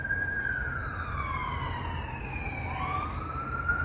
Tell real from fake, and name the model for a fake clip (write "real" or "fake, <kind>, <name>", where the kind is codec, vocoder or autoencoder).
real